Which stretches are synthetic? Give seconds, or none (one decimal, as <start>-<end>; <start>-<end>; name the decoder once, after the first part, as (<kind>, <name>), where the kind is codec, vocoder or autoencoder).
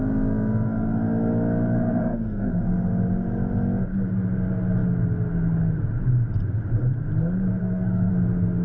2.0-2.6 (codec, SNAC); 7.6-8.1